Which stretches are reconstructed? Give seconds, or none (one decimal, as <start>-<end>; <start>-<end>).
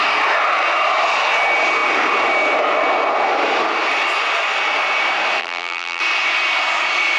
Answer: 5.4-6.0